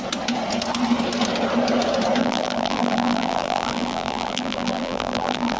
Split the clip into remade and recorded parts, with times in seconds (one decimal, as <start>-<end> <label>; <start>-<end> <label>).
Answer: 0.0-2.2 recorded; 2.2-5.6 remade